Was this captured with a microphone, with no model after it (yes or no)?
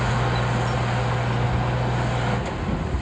yes